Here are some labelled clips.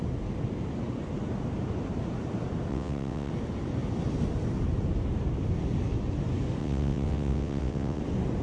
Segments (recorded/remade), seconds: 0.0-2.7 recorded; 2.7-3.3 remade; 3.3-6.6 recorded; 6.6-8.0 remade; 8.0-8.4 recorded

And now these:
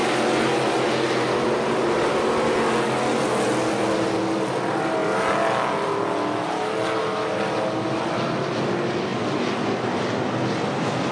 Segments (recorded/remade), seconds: 0.0-11.1 recorded

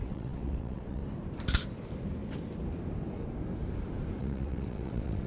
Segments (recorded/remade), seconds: 0.0-1.0 remade; 1.0-4.2 recorded; 4.2-5.3 remade

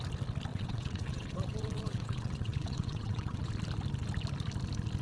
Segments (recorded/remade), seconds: 0.0-0.5 recorded; 0.5-3.5 remade; 3.5-5.0 recorded

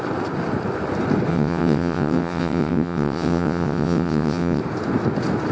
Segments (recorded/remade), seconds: 0.0-1.3 recorded; 1.3-4.6 remade; 4.6-5.5 recorded

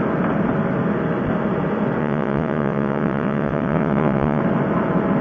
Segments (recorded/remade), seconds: 0.0-2.0 recorded; 2.0-4.4 remade; 4.4-5.2 recorded